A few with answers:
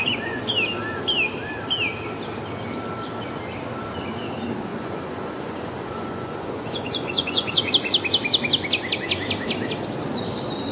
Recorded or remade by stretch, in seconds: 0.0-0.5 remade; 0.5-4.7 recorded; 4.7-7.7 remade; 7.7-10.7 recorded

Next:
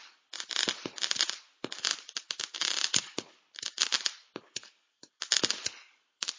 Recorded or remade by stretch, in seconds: 0.0-6.4 recorded

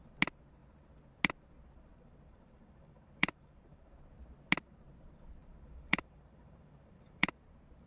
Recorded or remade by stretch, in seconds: 0.0-1.9 recorded; 1.9-3.9 remade; 3.9-5.4 recorded; 5.4-7.5 remade; 7.5-7.9 recorded

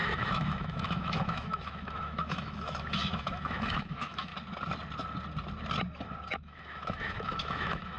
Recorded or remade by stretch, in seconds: 0.0-4.3 remade; 4.3-6.3 recorded; 6.3-8.0 remade

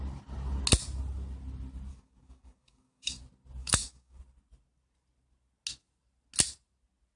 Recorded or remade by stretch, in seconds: 0.0-1.9 recorded; 1.9-3.2 remade; 3.2-3.6 recorded; 3.6-4.2 remade; 4.2-7.2 recorded

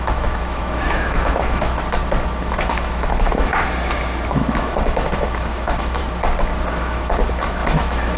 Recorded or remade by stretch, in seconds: 0.0-1.7 remade; 1.7-2.4 recorded; 2.4-3.5 remade; 3.5-4.3 recorded; 4.3-6.0 remade; 6.0-6.7 recorded; 6.7-8.2 remade